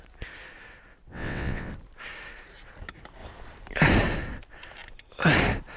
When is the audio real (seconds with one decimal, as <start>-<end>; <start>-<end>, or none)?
0.0-1.1; 1.7-5.8